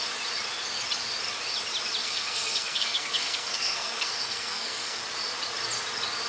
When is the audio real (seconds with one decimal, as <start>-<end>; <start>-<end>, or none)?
0.0-2.0; 5.0-6.3